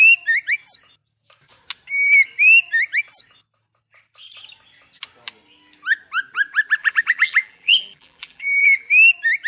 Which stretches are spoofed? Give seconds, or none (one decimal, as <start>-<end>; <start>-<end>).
6.8-8.9